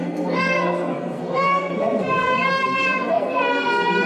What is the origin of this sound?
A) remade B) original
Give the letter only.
A